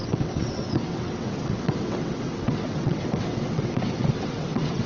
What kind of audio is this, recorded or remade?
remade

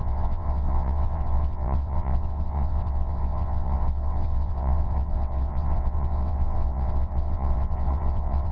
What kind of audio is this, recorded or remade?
remade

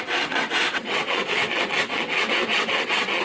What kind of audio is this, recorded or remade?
remade